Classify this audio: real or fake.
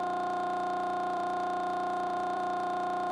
fake